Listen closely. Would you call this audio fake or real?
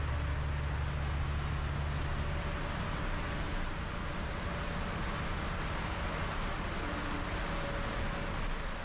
real